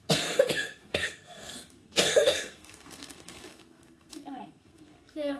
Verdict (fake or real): fake